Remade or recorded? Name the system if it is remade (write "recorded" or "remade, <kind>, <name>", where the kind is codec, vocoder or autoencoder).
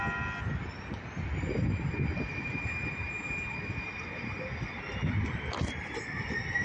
recorded